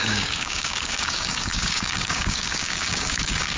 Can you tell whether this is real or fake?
fake